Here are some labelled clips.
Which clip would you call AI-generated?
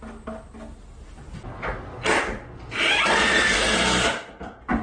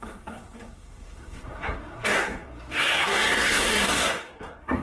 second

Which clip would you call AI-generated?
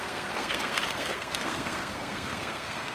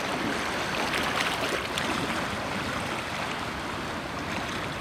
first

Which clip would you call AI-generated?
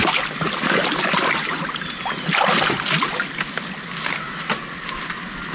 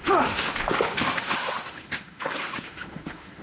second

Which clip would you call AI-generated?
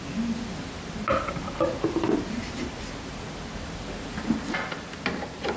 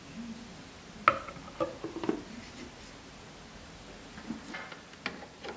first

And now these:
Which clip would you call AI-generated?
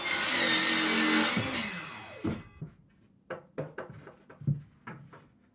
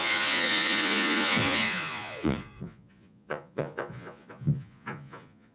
second